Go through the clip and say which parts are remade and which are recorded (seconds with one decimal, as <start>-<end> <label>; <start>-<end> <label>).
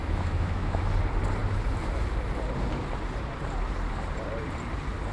0.0-0.8 remade; 0.8-5.1 recorded